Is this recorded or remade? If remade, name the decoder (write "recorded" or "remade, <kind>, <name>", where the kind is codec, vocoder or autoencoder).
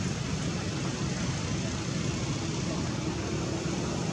recorded